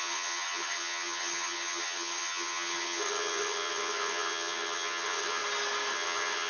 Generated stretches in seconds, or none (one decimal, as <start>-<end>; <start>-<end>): 0.0-5.4; 5.9-6.5